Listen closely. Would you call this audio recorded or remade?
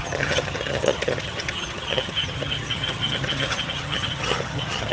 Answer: remade